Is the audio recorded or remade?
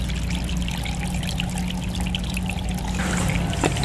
recorded